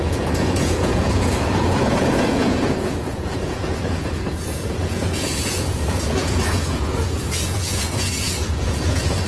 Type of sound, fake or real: fake